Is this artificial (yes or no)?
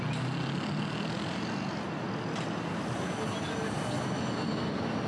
no